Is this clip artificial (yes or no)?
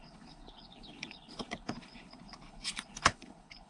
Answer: yes